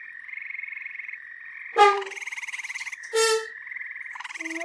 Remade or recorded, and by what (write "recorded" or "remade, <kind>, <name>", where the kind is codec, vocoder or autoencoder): recorded